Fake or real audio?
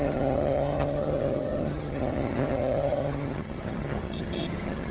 fake